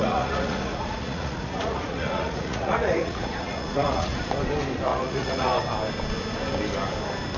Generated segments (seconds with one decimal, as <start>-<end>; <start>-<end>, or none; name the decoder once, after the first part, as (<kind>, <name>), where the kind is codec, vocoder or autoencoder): 0.0-4.2 (vocoder, Vocos); 4.9-5.6